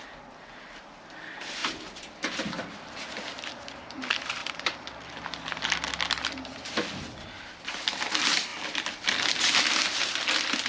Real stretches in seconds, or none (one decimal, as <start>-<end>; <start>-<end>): 0.0-10.7